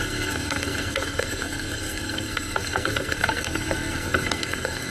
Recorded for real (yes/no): no